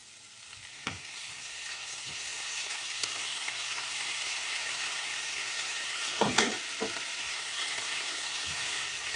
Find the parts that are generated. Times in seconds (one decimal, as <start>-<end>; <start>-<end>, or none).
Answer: 0.7-6.5; 7.2-9.2